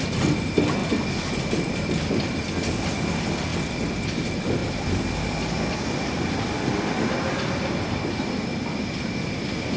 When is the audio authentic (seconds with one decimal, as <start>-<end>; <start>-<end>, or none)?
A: 0.0-9.8